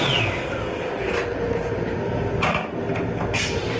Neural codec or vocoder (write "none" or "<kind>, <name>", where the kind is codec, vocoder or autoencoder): none